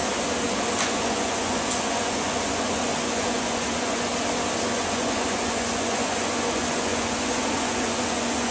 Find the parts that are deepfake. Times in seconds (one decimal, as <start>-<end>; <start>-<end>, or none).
0.8-4.1; 4.6-8.5